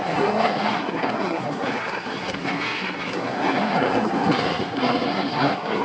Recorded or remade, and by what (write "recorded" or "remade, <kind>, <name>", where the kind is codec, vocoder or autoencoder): remade, codec, SNAC